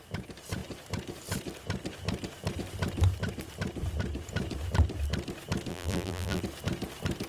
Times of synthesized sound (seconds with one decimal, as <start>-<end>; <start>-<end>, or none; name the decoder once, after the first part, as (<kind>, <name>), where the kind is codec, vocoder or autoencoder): 5.7-6.4 (vocoder, BigVGAN v2)